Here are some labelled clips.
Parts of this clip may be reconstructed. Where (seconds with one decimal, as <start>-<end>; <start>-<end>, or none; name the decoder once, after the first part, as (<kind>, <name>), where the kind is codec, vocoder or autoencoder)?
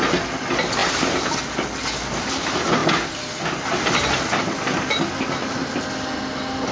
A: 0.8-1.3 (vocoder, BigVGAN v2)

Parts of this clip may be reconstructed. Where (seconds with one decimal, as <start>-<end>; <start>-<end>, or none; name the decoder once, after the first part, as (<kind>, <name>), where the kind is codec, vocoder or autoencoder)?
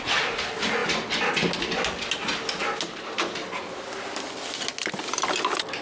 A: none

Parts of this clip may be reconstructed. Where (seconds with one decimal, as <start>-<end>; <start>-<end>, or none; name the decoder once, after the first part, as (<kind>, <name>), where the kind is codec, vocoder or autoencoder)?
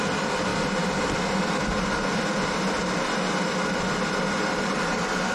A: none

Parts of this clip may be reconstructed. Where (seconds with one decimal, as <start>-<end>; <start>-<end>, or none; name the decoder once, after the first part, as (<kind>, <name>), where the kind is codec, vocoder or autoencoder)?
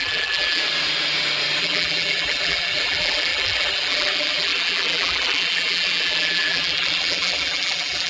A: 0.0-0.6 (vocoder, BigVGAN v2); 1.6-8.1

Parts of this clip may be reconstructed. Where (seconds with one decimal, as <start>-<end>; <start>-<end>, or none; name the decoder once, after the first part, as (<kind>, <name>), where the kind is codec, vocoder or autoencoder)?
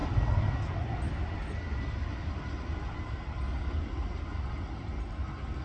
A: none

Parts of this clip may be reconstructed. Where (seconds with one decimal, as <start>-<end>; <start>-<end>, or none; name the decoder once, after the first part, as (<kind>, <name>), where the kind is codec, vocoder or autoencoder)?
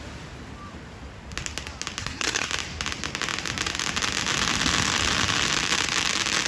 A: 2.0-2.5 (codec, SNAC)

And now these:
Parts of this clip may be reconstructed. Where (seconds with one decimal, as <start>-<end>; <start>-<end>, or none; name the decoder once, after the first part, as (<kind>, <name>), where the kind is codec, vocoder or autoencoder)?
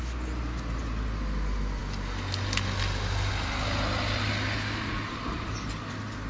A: none